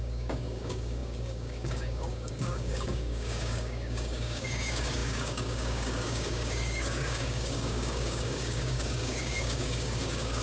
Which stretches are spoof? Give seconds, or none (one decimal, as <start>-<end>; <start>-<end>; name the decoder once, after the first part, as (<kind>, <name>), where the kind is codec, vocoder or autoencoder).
0.0-10.4 (codec, DAC)